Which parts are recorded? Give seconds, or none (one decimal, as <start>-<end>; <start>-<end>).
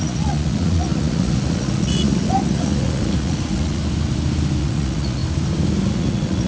3.8-4.6; 5.2-5.9